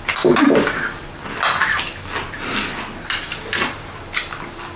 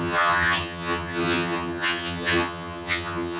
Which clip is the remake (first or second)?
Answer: second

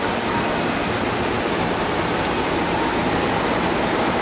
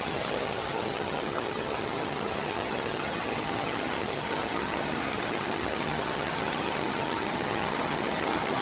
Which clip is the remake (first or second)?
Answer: second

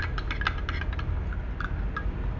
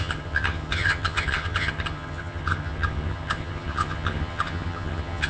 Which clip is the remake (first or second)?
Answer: second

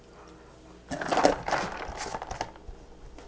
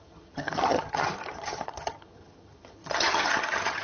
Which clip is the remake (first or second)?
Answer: second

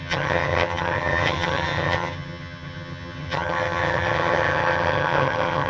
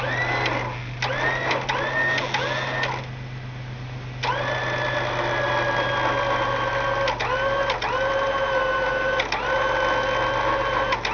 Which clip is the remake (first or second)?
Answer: first